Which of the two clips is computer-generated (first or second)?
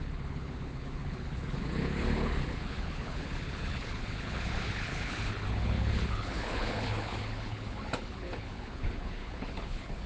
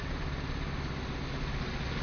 first